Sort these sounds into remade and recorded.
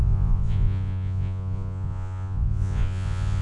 remade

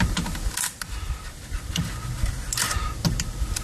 recorded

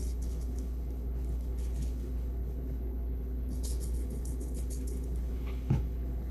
remade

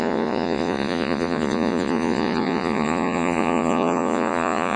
remade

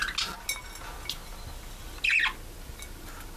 recorded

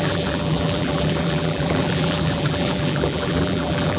remade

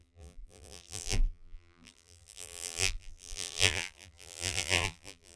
remade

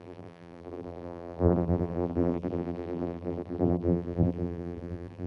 remade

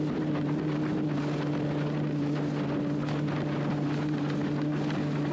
recorded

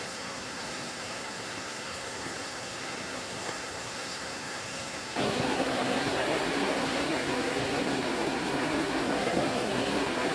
remade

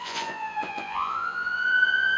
remade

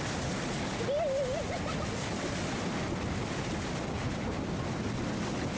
recorded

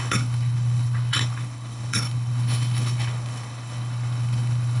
remade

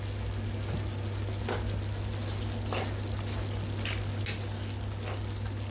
recorded